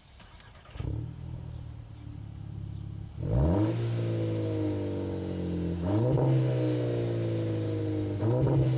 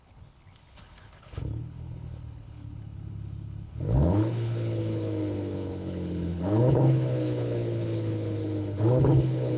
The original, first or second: first